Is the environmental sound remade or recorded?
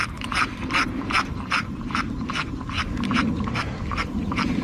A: remade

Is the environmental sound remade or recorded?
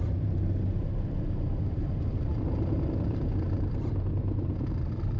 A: remade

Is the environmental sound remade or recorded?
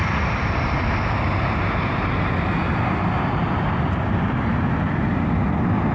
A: recorded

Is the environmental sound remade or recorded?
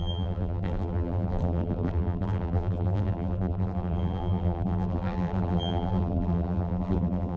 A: remade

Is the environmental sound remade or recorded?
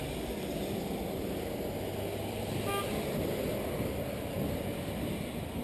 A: recorded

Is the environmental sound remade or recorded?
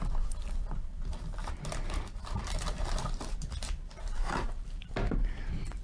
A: remade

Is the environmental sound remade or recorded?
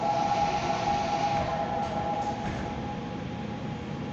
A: recorded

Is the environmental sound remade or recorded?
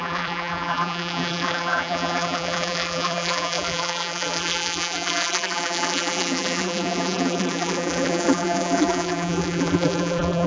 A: remade